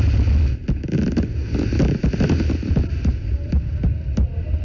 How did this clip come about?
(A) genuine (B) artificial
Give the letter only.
A